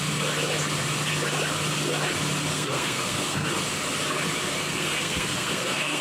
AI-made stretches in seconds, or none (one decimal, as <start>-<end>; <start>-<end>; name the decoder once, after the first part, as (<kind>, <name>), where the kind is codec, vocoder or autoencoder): 2.5-3.5 (codec, SNAC); 4.5-6.0